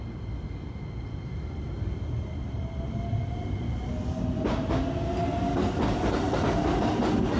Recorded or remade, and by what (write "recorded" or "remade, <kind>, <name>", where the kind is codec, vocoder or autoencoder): recorded